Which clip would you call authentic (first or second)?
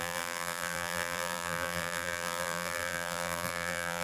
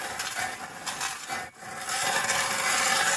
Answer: second